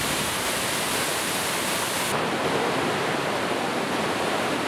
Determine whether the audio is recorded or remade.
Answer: remade